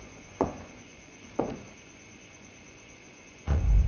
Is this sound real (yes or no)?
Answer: no